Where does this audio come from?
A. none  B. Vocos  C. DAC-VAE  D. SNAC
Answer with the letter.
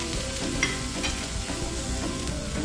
B